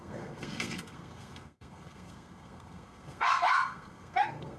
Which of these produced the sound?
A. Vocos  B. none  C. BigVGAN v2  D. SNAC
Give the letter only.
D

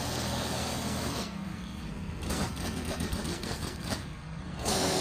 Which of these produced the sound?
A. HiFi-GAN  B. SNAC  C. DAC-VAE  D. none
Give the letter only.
B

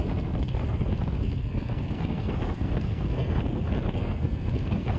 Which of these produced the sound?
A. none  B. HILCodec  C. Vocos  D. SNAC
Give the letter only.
D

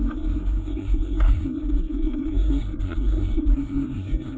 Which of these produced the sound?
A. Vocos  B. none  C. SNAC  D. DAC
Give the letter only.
C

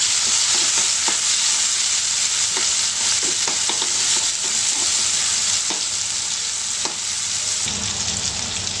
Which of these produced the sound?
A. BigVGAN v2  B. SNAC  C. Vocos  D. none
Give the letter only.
D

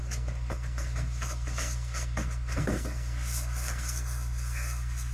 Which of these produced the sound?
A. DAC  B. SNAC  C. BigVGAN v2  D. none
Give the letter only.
B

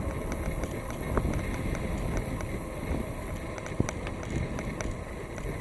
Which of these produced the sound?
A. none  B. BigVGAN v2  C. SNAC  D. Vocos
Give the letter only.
A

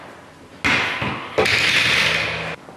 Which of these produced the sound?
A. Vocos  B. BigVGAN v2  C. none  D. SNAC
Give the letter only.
C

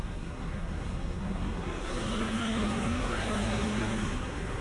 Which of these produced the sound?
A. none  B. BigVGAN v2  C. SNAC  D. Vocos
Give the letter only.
C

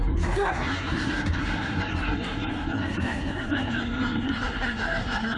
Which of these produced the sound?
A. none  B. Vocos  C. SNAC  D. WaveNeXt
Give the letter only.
C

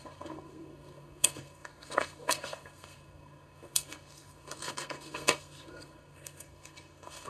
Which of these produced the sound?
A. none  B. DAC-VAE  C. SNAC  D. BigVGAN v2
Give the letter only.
C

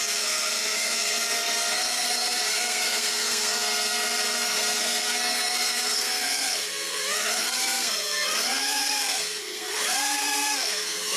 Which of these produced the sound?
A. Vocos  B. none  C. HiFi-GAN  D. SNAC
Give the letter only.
D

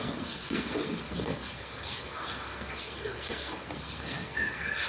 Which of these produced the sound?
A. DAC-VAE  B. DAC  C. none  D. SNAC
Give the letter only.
D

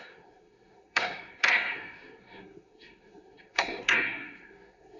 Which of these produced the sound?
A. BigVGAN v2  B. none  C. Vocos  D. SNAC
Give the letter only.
D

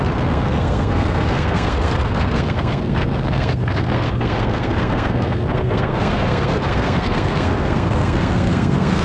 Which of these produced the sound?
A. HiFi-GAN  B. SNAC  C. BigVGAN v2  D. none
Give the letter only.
B